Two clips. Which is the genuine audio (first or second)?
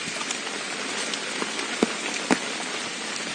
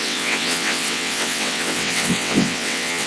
first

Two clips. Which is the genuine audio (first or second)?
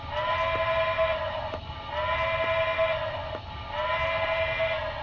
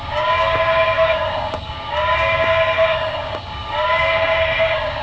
first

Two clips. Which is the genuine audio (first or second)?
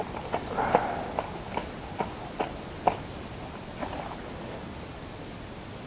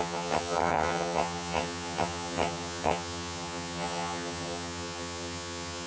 first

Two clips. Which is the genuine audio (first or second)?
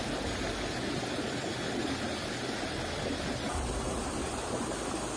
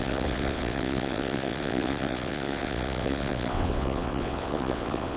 first